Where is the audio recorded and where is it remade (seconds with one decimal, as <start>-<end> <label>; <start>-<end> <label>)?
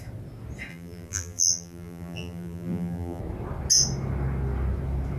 0.0-0.7 recorded; 0.7-3.2 remade; 3.2-5.2 recorded